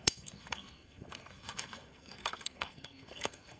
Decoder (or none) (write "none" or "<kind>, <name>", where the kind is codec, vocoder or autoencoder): codec, SNAC